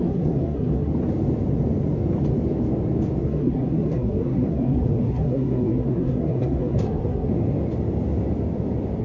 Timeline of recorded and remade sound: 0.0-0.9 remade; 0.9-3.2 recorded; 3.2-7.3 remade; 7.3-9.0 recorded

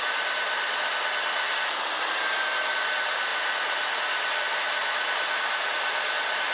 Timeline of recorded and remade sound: 0.0-6.5 recorded